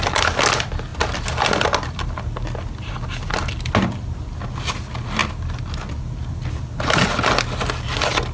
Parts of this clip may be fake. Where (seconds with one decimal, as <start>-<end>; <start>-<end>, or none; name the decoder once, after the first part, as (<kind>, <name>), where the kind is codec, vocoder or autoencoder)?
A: none